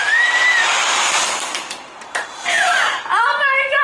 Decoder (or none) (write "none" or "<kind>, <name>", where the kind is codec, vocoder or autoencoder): vocoder, BigVGAN v2